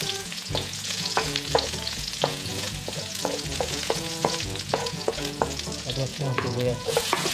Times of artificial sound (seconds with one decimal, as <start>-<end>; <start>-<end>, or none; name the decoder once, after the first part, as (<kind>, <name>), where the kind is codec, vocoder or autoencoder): 0.0-7.3 (vocoder, Vocos)